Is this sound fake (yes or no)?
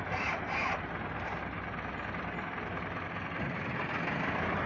no